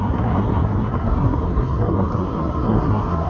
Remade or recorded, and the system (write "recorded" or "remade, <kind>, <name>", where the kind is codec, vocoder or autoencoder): remade, codec, SNAC